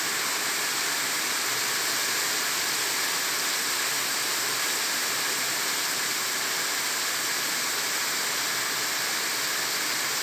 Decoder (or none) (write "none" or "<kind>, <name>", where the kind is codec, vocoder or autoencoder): none